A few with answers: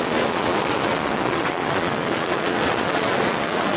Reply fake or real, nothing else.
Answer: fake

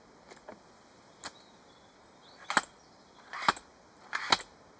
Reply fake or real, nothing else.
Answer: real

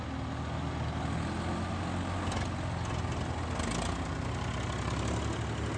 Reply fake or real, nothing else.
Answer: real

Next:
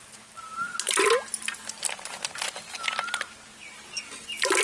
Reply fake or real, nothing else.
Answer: real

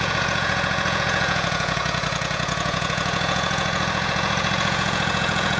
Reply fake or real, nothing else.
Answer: fake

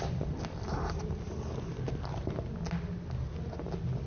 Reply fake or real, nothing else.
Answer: real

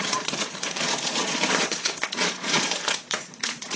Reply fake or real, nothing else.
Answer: fake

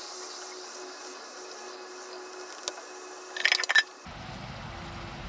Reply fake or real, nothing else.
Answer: real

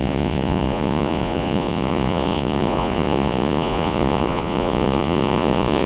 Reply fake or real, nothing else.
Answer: fake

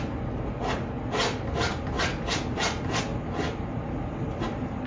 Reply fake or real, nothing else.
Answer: real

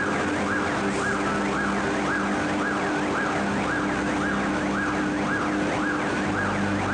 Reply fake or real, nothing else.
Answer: real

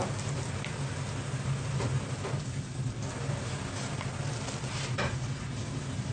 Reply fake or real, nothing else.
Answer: real